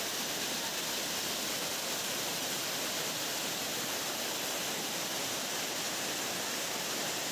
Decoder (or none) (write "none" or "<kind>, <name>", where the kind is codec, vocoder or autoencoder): none